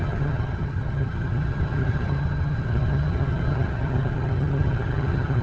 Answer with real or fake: fake